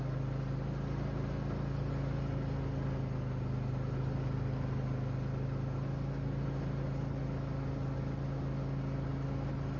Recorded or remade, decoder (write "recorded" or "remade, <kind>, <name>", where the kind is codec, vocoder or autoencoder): recorded